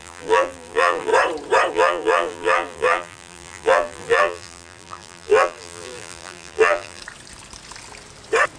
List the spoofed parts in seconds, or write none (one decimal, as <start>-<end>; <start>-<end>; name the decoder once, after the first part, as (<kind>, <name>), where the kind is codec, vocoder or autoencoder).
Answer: 0.0-1.1 (vocoder, BigVGAN v2); 1.7-7.0